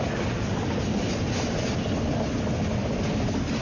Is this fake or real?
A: real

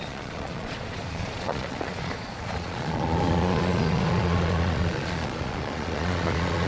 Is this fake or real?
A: fake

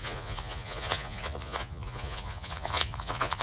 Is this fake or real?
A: fake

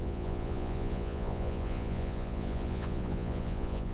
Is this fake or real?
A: fake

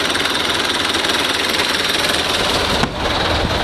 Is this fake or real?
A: real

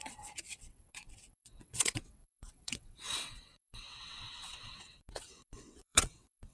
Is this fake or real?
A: fake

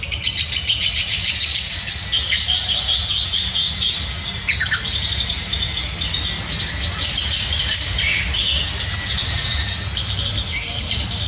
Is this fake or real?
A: real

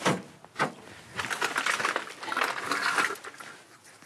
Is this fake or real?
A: real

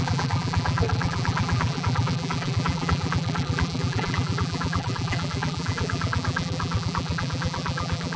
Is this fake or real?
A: fake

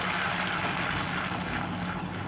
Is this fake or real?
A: real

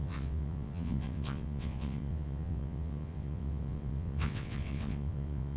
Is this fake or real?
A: fake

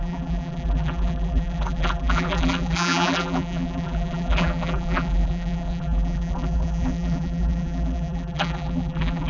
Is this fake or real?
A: fake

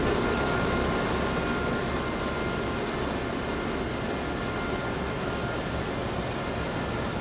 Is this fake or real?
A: real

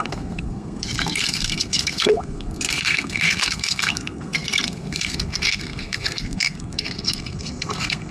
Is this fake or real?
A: fake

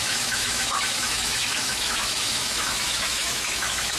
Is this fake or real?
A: fake